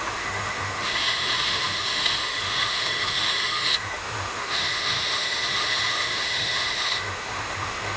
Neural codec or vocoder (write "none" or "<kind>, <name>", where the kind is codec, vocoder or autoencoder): autoencoder, DAC-VAE